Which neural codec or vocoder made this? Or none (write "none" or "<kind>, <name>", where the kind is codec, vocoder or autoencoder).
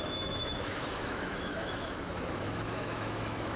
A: autoencoder, DAC-VAE